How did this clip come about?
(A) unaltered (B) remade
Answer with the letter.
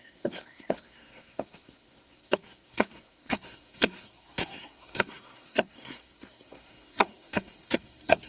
B